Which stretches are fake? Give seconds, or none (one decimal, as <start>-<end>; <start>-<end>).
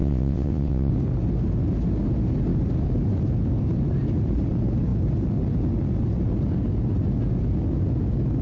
0.0-0.9